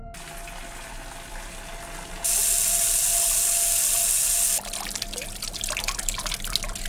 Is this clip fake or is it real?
real